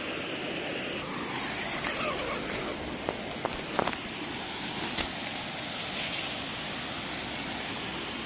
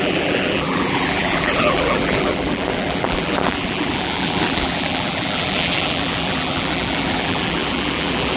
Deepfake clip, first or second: second